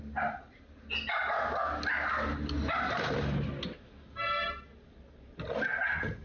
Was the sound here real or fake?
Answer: real